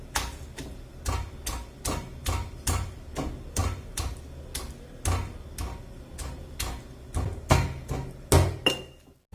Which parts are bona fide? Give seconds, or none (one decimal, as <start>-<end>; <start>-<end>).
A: 0.0-9.3

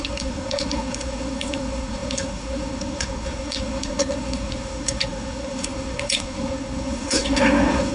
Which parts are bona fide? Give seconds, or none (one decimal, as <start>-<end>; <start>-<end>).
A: none

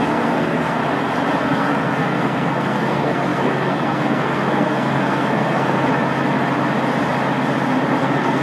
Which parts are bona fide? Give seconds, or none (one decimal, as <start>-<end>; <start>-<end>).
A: 0.8-1.4; 5.9-8.0